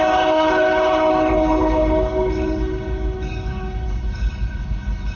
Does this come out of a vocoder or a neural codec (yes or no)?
yes